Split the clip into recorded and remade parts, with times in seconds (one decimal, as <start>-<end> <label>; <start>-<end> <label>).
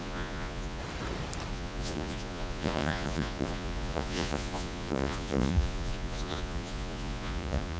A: 0.0-0.8 remade; 0.8-1.5 recorded; 1.5-7.8 remade